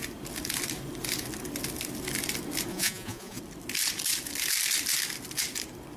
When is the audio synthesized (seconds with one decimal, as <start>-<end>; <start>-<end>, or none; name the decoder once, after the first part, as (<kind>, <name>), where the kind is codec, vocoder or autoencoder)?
2.7-3.4 (vocoder, Vocos)